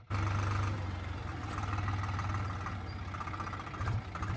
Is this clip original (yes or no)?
yes